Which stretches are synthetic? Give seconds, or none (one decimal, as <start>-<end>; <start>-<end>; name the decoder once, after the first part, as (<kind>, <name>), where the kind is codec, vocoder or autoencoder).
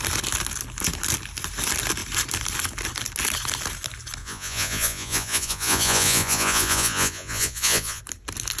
4.2-8.0 (vocoder, Vocos)